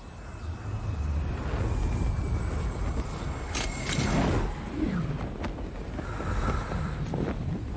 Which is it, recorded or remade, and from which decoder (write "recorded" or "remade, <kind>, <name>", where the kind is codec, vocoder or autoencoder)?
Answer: recorded